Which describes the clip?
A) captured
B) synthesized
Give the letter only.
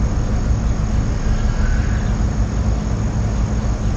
A